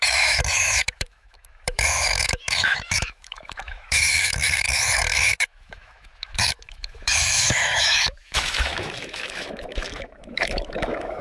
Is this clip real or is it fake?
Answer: fake